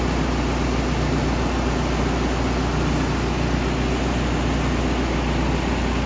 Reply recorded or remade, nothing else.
recorded